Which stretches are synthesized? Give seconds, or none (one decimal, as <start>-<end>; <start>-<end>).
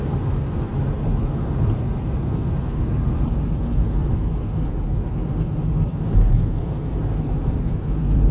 0.0-0.7; 2.8-8.3